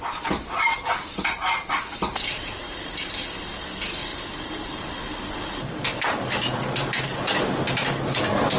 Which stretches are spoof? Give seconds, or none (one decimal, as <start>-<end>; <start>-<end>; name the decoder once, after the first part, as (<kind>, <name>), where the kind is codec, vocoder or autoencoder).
4.1-4.9 (vocoder, BigVGAN v2)